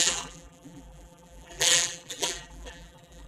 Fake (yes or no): yes